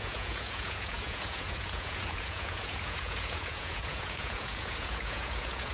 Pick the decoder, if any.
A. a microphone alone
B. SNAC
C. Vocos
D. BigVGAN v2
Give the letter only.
C